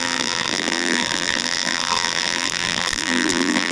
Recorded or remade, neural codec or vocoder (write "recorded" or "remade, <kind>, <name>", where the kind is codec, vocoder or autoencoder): remade, vocoder, BigVGAN v2